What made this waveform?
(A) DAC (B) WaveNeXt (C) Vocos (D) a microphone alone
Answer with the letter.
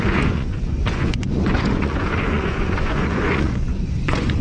C